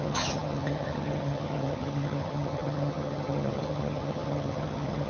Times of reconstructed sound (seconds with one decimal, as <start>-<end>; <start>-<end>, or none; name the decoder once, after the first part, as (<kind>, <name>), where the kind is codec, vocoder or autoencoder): 0.0-5.1 (vocoder, HiFi-GAN)